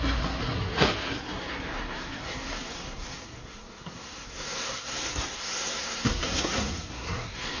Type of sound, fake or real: fake